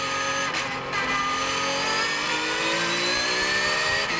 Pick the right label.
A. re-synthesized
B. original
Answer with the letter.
B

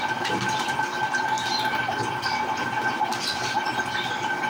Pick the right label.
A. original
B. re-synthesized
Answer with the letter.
B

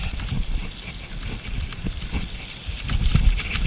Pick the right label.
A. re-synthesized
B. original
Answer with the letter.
B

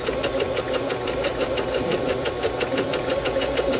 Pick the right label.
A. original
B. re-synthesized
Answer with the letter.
A